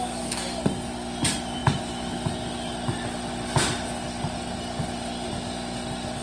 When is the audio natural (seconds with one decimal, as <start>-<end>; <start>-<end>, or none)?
0.0-6.2